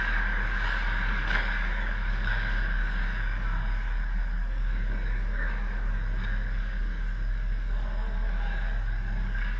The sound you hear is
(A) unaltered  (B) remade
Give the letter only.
B